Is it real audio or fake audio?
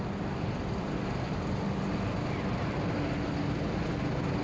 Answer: real